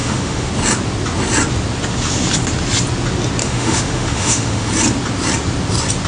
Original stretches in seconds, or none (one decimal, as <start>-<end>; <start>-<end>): 0.5-3.4; 4.7-6.1